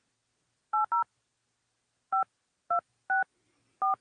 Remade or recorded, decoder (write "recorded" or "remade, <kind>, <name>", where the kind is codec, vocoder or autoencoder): recorded